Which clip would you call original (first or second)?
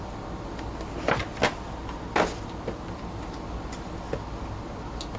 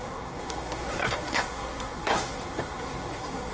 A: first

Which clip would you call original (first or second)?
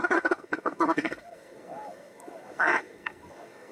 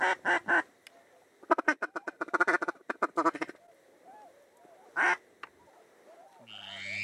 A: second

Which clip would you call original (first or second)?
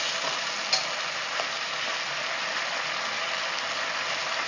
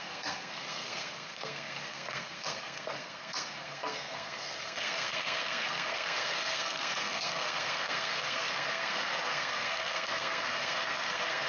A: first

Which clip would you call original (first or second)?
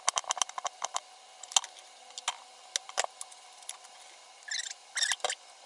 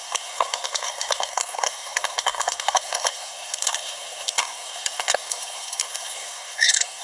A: first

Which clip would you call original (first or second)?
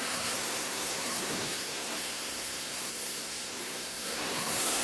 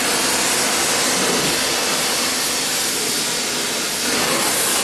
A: second